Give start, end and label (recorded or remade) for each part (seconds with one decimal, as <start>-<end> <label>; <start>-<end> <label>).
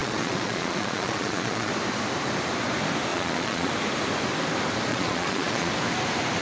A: 0.0-1.7 remade; 1.7-3.1 recorded; 3.1-3.7 remade; 3.7-4.9 recorded; 4.9-5.7 remade; 5.7-6.4 recorded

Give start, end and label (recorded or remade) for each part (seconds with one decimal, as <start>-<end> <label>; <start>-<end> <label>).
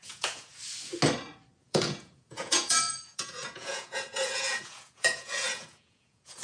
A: 0.0-0.5 remade; 0.5-1.6 recorded; 1.6-6.4 remade